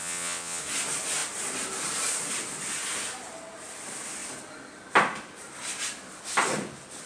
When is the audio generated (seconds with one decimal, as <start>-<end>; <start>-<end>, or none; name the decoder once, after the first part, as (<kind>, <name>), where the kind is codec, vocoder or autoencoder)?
0.0-0.6 (vocoder, WaveNeXt)